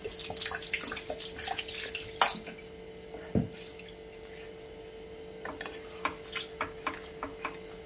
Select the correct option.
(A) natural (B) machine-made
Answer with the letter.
A